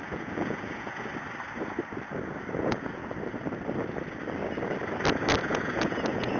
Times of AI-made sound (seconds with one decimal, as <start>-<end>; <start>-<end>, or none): 0.0-1.1; 2.6-3.0; 5.4-6.4